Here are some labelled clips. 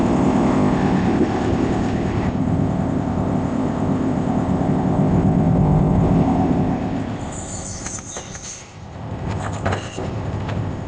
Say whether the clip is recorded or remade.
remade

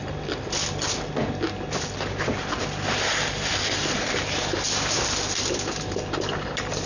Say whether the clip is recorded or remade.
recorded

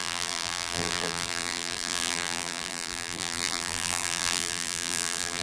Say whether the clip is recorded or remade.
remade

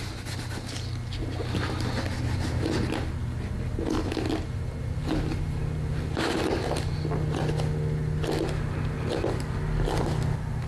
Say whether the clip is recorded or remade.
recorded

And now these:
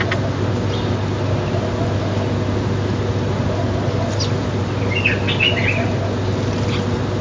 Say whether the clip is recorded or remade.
recorded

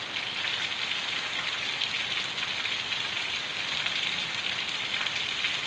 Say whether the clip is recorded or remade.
recorded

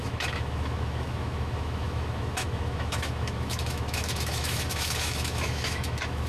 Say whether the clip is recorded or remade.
remade